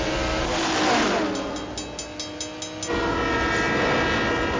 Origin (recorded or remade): recorded